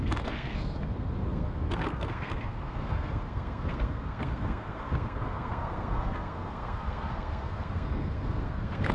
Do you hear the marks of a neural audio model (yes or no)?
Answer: yes